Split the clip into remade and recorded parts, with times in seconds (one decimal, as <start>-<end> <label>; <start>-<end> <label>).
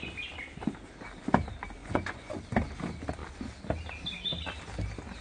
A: 0.0-1.8 recorded; 1.8-2.3 remade; 2.3-5.2 recorded